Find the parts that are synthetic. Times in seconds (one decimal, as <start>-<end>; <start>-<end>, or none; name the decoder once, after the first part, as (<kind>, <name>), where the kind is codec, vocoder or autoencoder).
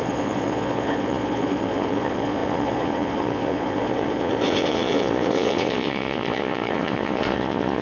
0.0-7.8 (vocoder, Vocos)